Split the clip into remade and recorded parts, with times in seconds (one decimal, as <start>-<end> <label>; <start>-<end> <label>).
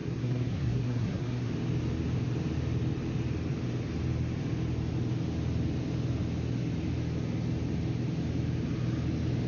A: 0.0-1.5 remade; 1.5-9.5 recorded